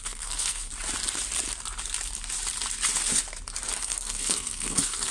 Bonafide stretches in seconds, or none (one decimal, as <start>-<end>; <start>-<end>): 0.7-3.8